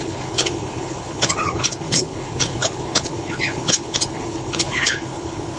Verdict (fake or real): fake